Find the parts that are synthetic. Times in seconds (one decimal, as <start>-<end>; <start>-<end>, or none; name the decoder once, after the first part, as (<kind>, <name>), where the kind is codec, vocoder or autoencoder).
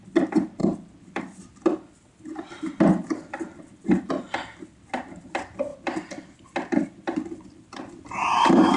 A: 0.6-1.2 (vocoder, BigVGAN v2); 5.7-7.8